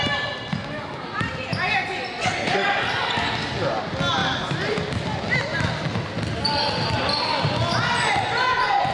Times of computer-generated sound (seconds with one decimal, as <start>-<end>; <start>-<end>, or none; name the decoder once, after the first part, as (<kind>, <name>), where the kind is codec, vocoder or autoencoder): none